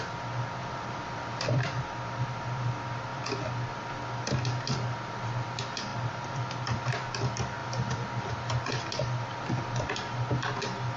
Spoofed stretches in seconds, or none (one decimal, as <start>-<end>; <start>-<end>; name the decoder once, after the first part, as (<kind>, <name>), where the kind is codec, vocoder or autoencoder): 0.6-1.8 (vocoder, BigVGAN v2); 5.9-6.6